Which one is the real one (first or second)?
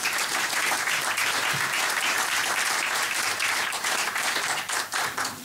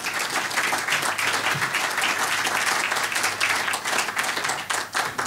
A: second